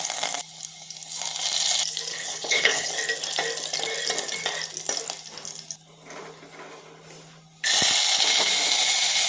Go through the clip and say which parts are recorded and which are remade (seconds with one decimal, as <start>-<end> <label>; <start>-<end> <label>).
0.0-2.1 recorded; 2.1-2.9 remade; 2.9-9.3 recorded